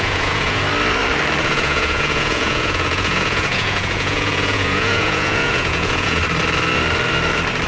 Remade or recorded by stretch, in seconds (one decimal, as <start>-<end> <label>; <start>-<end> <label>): 0.0-0.6 remade; 0.6-1.4 recorded; 1.4-6.2 remade; 6.2-7.7 recorded